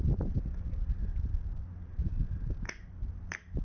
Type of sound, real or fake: real